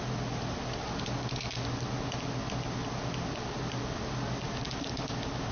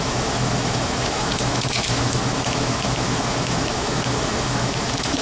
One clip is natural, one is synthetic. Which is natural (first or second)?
first